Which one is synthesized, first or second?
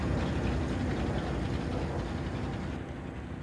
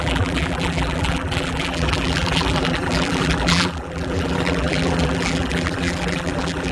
second